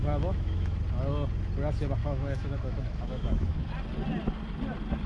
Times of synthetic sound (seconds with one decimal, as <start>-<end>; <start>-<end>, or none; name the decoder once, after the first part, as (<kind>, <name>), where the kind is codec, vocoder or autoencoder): 0.0-0.8 (autoencoder, DAC-VAE); 2.0-3.7